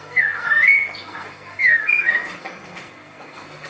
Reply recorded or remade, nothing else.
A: remade